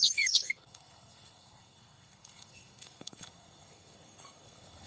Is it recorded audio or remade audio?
remade